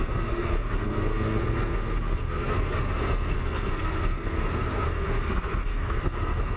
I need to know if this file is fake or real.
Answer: fake